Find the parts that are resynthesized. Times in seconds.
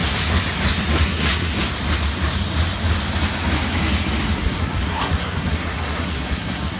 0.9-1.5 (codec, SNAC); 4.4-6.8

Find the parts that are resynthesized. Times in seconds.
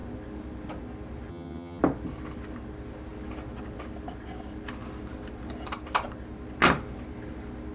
1.3-1.8 (vocoder, HiFi-GAN)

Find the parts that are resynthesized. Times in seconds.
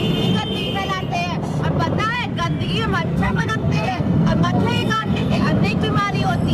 3.1-5.4 (codec, SNAC)